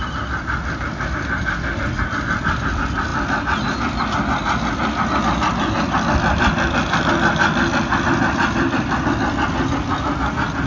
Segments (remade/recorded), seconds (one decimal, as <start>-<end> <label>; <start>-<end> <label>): 0.0-10.7 recorded